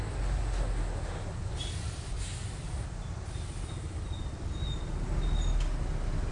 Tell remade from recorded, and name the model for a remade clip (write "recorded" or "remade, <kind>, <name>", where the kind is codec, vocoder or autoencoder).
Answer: recorded